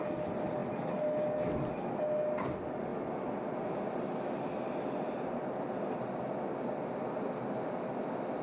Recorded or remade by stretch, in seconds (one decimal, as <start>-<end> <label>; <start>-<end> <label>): 0.0-8.4 recorded